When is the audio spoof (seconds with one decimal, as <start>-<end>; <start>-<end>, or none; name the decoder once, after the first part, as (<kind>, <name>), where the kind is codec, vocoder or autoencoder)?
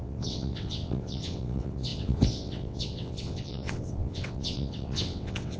0.0-5.6 (vocoder, WaveNeXt)